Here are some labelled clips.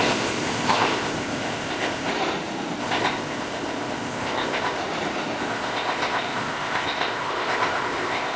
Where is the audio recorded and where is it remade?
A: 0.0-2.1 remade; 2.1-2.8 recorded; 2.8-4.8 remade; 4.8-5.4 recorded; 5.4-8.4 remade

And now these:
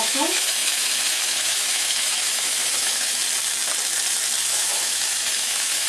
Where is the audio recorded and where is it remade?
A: 0.0-3.2 remade; 3.2-4.5 recorded; 4.5-5.9 remade

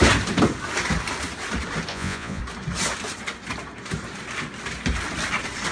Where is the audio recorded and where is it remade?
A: 0.0-1.9 recorded; 1.9-2.4 remade; 2.4-5.7 recorded

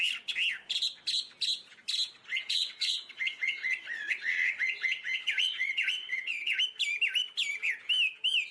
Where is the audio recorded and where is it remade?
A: 0.0-2.3 recorded; 2.3-6.6 remade; 6.6-8.5 recorded

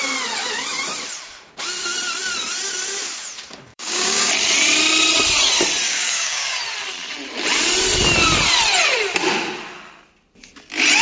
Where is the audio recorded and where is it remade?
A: 0.0-3.7 recorded; 3.7-4.3 remade; 4.3-5.9 recorded; 5.9-6.6 remade; 6.6-11.0 recorded

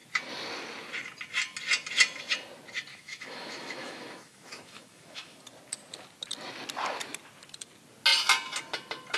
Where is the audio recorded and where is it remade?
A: 0.0-2.9 recorded; 2.9-5.4 remade; 5.4-9.2 recorded

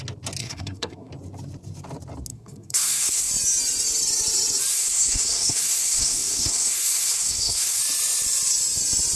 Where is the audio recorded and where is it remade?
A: 0.0-0.4 recorded; 0.4-1.1 remade; 1.1-2.3 recorded; 2.3-3.3 remade; 3.3-4.7 recorded; 4.7-7.8 remade; 7.8-9.2 recorded

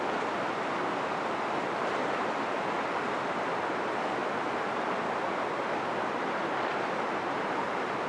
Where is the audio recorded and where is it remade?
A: 0.0-8.1 recorded